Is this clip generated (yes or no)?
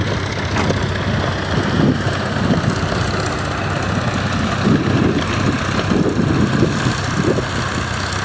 no